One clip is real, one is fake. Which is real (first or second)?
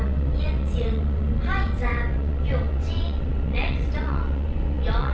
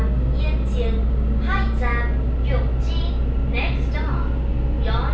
second